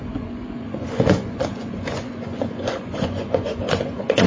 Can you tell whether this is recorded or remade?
remade